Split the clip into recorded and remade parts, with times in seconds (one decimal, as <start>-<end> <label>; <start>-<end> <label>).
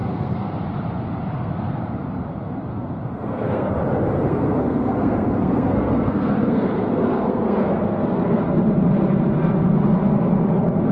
0.0-0.6 remade; 0.6-1.3 recorded; 1.3-1.8 remade; 1.8-2.7 recorded; 2.7-3.7 remade; 3.7-4.3 recorded; 4.3-8.4 remade; 8.4-10.9 recorded